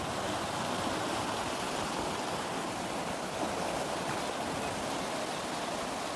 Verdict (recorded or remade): recorded